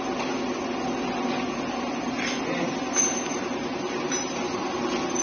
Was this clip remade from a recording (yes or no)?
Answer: no